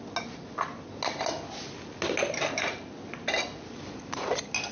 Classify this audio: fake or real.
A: real